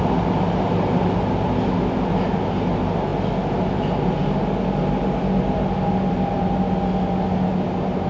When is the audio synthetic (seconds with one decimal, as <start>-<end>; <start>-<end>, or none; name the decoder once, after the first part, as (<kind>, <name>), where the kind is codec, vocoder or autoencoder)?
none